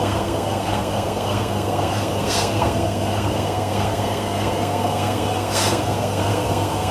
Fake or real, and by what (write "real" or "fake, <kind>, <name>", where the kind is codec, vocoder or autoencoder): fake, codec, SNAC